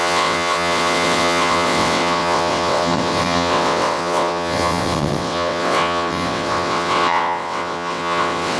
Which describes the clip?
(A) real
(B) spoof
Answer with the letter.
B